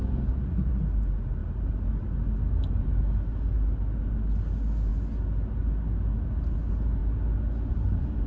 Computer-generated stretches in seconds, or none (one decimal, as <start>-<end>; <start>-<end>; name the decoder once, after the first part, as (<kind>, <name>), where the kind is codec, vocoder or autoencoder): none